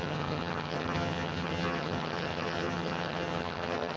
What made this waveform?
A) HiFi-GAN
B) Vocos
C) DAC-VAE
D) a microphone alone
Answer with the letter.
A